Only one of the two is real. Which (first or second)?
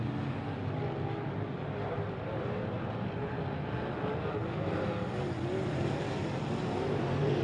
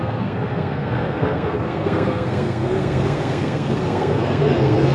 first